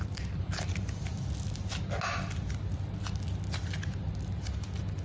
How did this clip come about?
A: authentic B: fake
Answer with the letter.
A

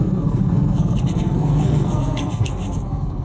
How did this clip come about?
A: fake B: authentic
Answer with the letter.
A